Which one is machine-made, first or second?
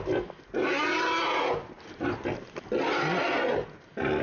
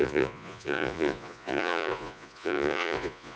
second